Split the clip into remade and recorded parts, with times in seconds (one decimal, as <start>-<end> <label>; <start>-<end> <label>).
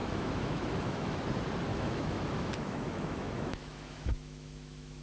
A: 0.0-1.2 remade; 1.2-1.7 recorded; 1.7-5.0 remade